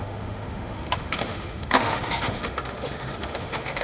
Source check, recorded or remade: remade